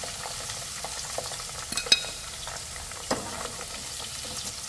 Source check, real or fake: real